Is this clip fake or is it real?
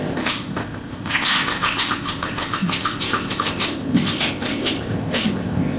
fake